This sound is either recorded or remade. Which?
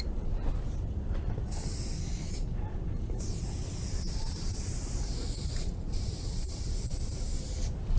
recorded